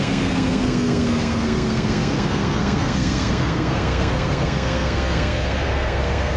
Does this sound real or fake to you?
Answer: fake